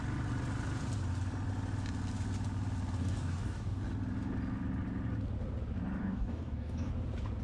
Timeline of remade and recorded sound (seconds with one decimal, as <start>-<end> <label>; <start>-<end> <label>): 0.0-3.0 recorded; 3.0-3.8 remade; 3.8-6.0 recorded; 6.0-6.9 remade; 6.9-7.4 recorded